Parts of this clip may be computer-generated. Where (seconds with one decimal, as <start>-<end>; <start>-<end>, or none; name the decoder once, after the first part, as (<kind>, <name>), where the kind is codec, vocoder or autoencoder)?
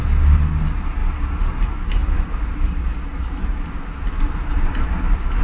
2.0-5.4 (vocoder, BigVGAN v2)